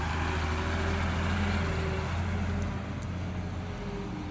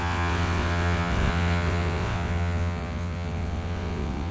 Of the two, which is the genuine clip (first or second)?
first